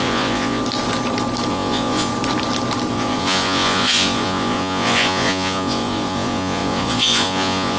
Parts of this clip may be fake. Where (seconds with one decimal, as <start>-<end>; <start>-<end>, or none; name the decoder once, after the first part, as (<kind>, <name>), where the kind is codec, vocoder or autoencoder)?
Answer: 0.0-0.6 (vocoder, Vocos); 1.5-2.1; 2.9-7.8